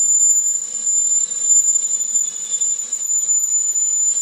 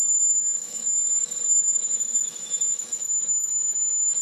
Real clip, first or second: first